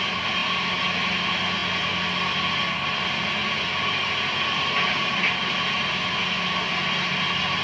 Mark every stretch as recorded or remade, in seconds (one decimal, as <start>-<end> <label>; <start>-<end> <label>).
0.0-7.6 recorded